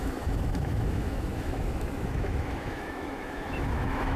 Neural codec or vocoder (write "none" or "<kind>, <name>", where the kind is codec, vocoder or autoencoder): autoencoder, DAC-VAE